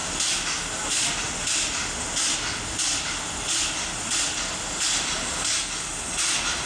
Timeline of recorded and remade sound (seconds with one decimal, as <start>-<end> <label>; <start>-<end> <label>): 0.0-6.7 recorded